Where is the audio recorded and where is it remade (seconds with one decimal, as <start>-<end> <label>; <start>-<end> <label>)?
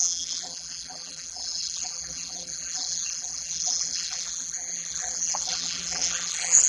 0.0-6.7 remade